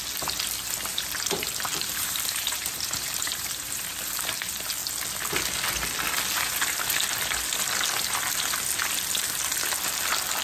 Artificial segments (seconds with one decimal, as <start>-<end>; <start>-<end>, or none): 0.9-3.9